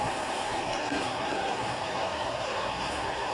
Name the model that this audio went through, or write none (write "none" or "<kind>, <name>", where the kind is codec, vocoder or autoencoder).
codec, SNAC